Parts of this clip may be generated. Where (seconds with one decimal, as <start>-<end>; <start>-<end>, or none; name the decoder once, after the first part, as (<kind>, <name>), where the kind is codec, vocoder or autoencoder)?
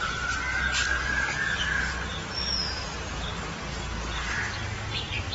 0.9-1.6 (vocoder, BigVGAN v2)